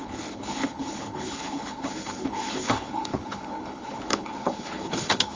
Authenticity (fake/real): fake